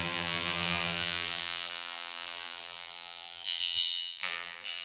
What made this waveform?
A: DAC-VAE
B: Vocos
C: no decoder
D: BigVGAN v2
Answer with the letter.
D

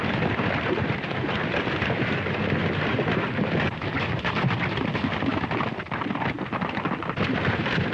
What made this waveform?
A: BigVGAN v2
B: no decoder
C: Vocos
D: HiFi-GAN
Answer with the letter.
A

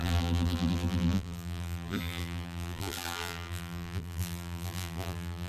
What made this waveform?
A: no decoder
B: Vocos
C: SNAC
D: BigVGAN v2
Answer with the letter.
D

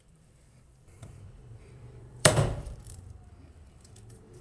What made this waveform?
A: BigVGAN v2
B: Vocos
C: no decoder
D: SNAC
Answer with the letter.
A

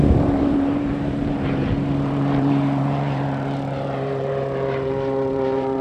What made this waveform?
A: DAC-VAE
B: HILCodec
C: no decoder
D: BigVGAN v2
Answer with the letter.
D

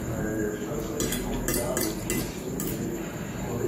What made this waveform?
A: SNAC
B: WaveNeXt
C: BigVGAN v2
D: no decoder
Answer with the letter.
D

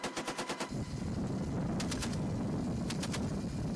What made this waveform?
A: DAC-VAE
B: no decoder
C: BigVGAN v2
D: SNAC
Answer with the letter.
B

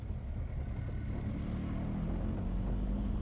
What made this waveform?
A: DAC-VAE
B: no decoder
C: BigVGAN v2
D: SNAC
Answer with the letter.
B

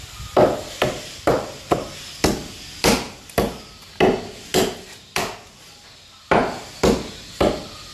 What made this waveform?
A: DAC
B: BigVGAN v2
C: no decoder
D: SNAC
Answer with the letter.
C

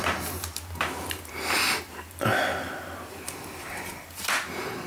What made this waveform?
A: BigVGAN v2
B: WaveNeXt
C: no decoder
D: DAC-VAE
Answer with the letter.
C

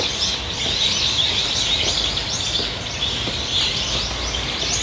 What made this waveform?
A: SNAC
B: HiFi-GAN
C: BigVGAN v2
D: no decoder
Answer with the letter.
D